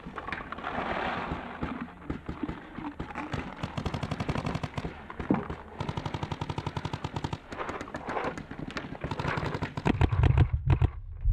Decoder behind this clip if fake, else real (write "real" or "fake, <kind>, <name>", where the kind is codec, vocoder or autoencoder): real